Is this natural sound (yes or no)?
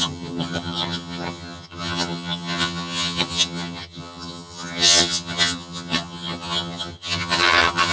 no